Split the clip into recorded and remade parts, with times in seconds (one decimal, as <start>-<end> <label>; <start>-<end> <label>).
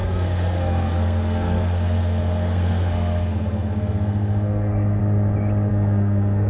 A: 0.0-5.0 remade; 5.0-5.7 recorded; 5.7-6.5 remade